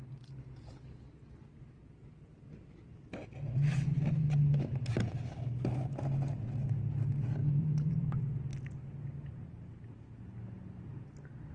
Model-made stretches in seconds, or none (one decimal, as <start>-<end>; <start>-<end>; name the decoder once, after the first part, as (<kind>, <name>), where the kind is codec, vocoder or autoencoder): 7.4-8.2 (vocoder, BigVGAN v2)